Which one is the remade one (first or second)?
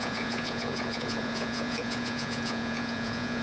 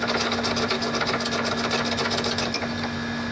first